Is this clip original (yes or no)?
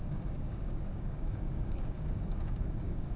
no